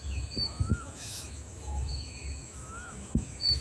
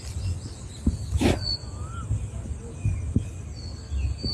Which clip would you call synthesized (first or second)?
first